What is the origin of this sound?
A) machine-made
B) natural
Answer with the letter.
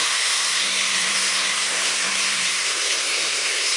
A